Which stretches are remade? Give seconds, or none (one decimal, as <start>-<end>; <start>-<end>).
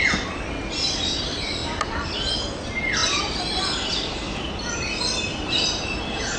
none